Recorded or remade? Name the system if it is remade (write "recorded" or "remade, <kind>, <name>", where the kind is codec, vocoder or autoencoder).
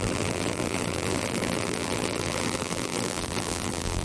remade, vocoder, BigVGAN v2